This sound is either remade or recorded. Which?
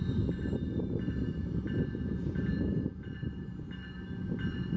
recorded